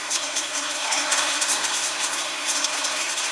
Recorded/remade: remade